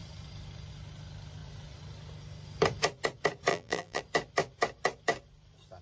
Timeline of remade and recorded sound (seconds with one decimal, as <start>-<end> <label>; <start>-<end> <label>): 0.0-3.5 recorded; 3.5-4.0 remade; 4.0-5.8 recorded